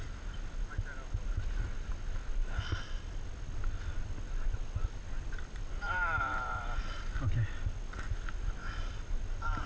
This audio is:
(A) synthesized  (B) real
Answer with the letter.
B